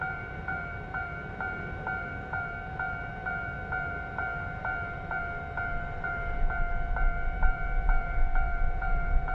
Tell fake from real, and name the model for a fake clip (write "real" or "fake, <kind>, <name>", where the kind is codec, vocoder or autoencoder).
fake, vocoder, BigVGAN v2